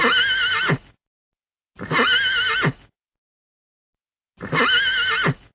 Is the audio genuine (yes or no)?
yes